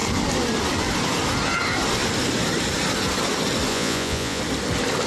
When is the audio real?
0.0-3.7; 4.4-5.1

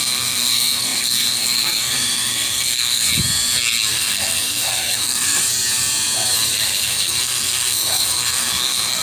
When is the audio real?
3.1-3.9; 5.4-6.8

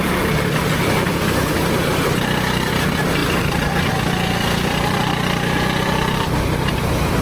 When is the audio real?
0.0-7.2

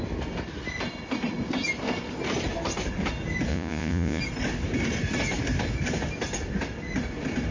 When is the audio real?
0.0-3.5; 4.2-7.5

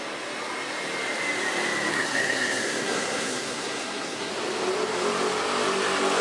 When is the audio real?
0.0-1.9; 4.3-6.2

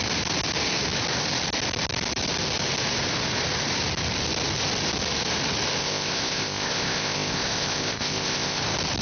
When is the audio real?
0.0-5.8; 8.6-9.0

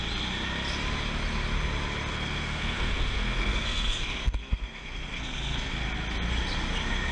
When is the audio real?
0.0-2.1; 5.7-7.1

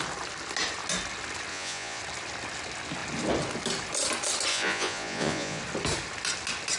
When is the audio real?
0.0-1.5; 2.0-4.5; 5.6-6.8